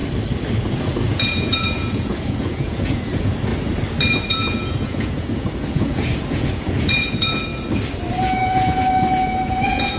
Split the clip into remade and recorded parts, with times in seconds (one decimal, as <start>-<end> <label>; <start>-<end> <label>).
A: 0.0-0.7 recorded; 0.7-3.5 remade; 3.5-4.3 recorded; 4.3-7.5 remade; 7.5-8.1 recorded; 8.1-10.0 remade

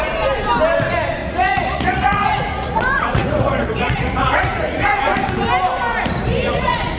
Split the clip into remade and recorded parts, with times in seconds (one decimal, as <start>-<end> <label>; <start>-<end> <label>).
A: 0.0-1.2 recorded; 1.2-5.0 remade; 5.0-5.9 recorded; 5.9-7.0 remade

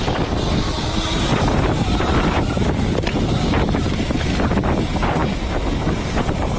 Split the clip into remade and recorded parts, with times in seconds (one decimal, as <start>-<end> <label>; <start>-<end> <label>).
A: 0.0-1.3 recorded; 1.3-3.7 remade; 3.7-6.6 recorded

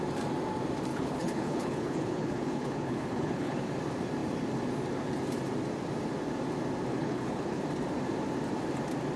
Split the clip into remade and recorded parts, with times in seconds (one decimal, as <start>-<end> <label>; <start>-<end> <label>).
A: 0.0-0.9 recorded; 0.9-3.6 remade; 3.6-6.9 recorded; 6.9-7.6 remade; 7.6-9.2 recorded

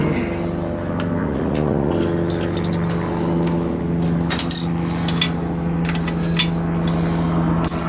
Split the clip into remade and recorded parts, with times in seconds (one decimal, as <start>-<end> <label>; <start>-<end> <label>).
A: 0.0-1.2 recorded; 1.2-1.9 remade; 1.9-7.9 recorded

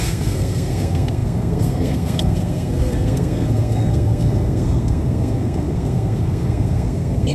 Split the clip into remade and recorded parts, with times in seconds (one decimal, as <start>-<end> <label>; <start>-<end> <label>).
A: 0.0-7.3 remade

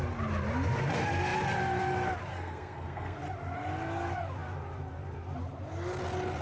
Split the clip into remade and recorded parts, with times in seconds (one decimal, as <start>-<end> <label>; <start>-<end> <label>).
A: 0.0-2.3 recorded; 2.3-3.2 remade; 3.2-6.4 recorded